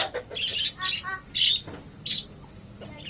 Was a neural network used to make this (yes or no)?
no